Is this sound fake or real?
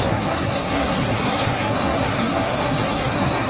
fake